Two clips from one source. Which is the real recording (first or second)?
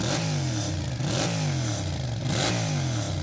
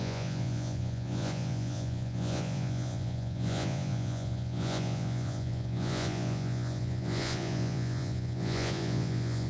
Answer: first